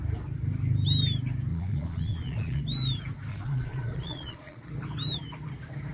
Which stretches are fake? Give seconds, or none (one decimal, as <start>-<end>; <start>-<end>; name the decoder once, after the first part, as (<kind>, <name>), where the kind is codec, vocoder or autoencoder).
1.5-2.6 (vocoder, Vocos); 3.3-4.7